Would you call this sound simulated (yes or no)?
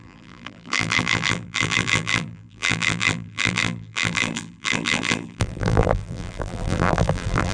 yes